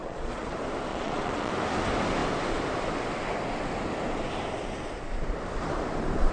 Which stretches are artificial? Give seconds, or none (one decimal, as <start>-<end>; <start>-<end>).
0.0-0.5; 0.9-1.5